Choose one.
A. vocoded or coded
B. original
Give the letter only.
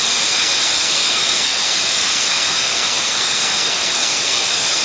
A